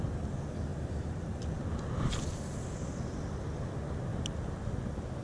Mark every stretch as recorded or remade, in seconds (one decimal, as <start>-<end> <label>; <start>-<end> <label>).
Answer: 0.0-0.7 recorded; 0.7-1.6 remade; 1.6-5.2 recorded